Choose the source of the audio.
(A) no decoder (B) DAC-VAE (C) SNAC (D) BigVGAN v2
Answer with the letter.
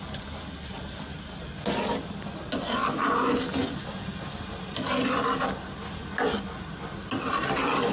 A